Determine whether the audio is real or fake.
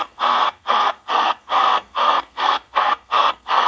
fake